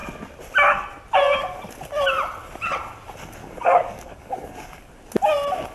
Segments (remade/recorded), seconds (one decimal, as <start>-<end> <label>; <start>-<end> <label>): 0.0-3.4 recorded; 3.4-4.9 remade; 4.9-5.7 recorded